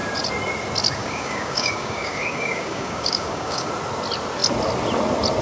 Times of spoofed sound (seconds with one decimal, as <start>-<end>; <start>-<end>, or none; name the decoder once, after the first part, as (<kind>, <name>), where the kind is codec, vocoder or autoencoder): 1.0-3.7 (codec, DAC)